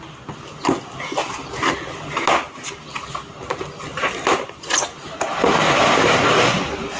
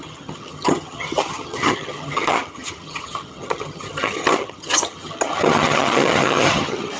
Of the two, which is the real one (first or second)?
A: first